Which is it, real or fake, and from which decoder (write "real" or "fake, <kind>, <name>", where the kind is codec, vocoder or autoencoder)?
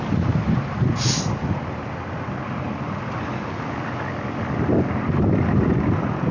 real